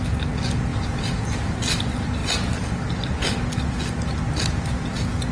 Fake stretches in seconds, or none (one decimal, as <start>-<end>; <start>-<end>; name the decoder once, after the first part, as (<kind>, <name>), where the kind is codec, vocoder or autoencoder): 0.7-1.6 (vocoder, BigVGAN v2)